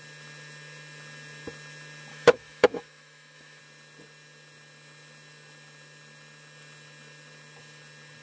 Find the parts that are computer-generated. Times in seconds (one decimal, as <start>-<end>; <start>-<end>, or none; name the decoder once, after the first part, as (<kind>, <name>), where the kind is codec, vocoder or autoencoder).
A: 2.1-3.6 (autoencoder, DAC-VAE)